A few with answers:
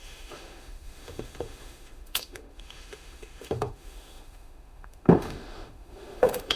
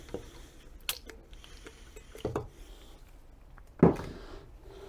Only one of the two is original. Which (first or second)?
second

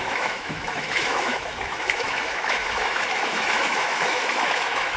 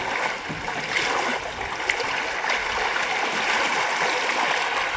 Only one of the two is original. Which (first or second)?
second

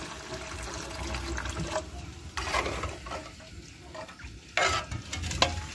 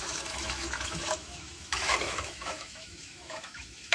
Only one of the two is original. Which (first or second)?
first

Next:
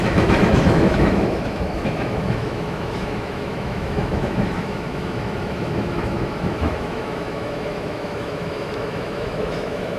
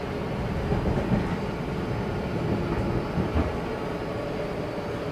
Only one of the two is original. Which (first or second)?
second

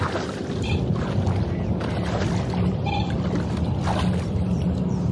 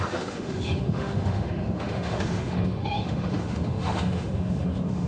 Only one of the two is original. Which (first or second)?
first